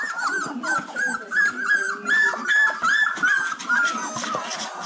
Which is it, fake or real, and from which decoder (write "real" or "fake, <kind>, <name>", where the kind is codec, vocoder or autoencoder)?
fake, vocoder, BigVGAN v2